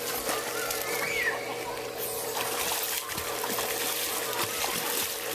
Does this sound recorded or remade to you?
recorded